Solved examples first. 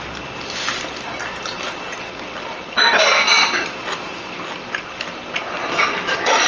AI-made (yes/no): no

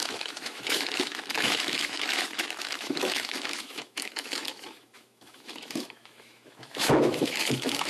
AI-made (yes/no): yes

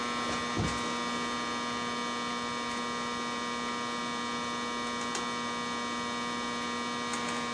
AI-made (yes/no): no